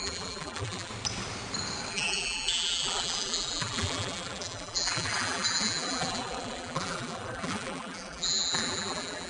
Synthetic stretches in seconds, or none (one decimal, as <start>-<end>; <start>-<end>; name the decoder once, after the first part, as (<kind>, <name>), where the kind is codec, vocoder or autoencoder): 0.0-0.9 (vocoder, BigVGAN v2); 1.9-9.3